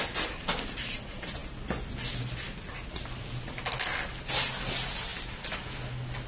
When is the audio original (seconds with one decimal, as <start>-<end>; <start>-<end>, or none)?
0.0-6.3